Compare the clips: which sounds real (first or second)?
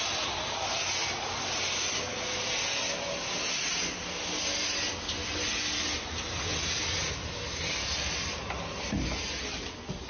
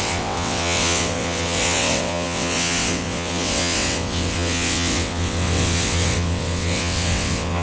first